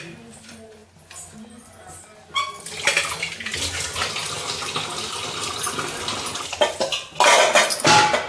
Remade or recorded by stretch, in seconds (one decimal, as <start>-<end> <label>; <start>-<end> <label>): 0.0-8.3 recorded